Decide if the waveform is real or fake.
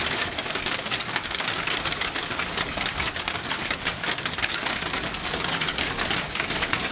fake